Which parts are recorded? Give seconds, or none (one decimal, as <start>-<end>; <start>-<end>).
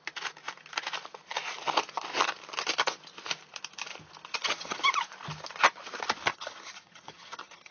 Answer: 0.0-4.3; 4.8-6.3